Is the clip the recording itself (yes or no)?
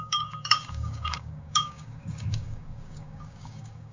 no